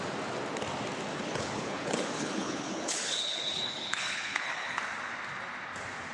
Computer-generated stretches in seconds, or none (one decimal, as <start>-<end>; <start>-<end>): 1.1-4.8